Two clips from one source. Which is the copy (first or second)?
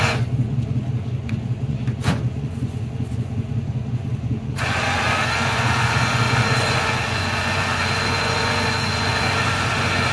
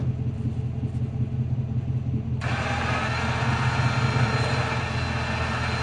first